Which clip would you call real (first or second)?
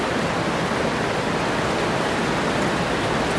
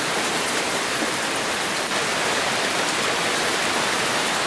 first